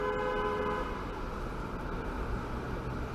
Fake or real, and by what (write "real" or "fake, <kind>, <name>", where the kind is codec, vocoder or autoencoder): real